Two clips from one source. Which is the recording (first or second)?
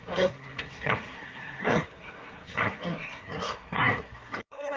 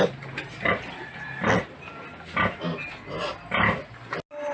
second